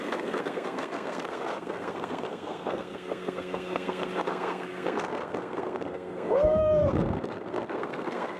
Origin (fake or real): fake